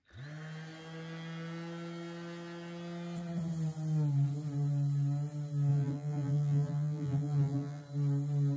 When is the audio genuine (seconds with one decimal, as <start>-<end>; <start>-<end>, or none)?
0.0-5.7; 7.8-8.6